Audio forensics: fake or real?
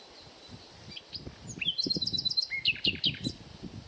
real